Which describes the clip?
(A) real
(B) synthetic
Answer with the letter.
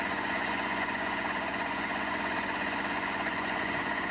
B